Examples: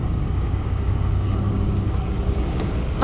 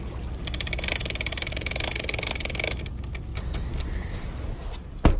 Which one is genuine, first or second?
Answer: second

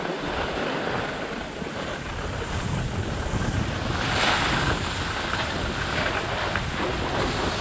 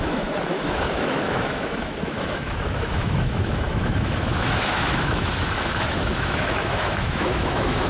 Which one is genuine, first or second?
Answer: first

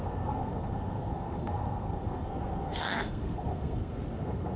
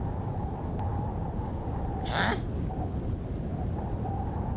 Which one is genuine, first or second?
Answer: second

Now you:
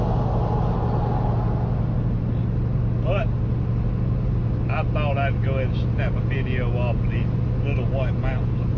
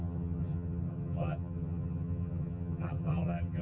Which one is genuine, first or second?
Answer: first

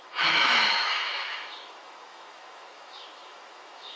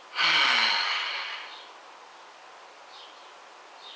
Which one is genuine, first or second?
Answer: second